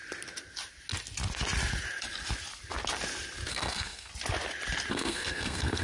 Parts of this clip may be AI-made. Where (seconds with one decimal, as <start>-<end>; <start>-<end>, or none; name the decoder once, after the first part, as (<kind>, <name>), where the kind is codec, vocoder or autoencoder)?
3.5-4.1 (codec, SNAC); 4.9-5.8